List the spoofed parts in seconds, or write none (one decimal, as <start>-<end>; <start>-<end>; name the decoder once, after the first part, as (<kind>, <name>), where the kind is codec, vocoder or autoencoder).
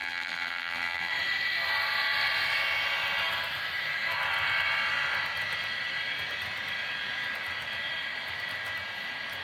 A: 0.0-1.1 (vocoder, BigVGAN v2)